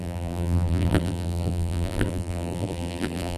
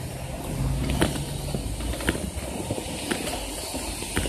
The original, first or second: second